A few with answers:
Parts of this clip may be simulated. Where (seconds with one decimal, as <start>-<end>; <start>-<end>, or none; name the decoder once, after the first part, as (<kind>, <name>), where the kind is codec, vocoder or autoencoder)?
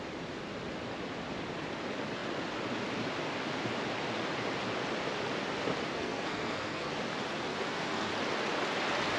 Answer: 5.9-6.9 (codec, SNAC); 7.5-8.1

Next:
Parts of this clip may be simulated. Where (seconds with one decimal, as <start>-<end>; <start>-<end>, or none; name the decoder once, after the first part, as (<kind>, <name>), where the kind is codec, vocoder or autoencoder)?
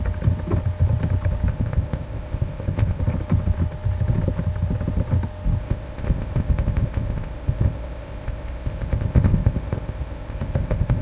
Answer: 1.5-3.0 (codec, ZipCodec); 5.6-11.0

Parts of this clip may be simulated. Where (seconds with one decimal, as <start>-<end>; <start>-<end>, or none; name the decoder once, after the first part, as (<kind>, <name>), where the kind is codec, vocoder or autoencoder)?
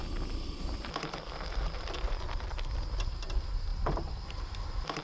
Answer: none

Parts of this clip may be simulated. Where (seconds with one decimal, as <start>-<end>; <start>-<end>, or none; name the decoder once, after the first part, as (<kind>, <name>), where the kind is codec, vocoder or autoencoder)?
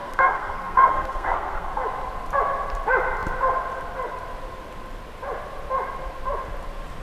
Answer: 0.0-1.7 (codec, SNAC)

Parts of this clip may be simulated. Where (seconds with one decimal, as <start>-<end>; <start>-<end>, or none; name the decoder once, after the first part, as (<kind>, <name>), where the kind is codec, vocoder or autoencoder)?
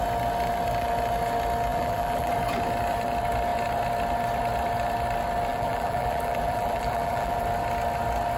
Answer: 1.7-2.3 (vocoder, BigVGAN v2); 5.5-7.4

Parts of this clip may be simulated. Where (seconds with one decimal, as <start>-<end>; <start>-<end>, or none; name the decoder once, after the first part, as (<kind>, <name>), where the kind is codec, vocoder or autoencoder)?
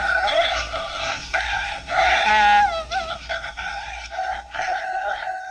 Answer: 0.0-2.3 (codec, SNAC); 3.1-5.5